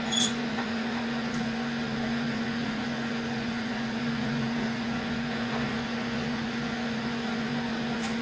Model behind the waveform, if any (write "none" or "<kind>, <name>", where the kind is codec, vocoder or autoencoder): vocoder, Vocos